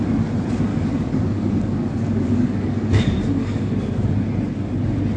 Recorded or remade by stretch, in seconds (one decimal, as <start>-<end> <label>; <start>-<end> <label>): 0.0-0.7 recorded; 0.7-3.8 remade; 3.8-5.2 recorded